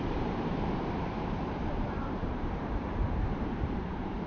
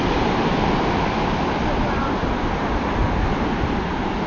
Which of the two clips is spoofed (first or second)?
first